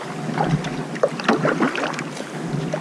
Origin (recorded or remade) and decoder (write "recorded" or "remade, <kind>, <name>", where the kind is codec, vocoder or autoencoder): recorded